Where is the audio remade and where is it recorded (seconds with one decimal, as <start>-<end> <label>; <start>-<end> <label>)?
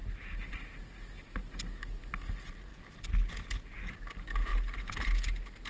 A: 0.0-5.7 recorded